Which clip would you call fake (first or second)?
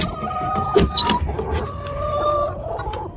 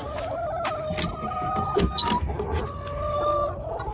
first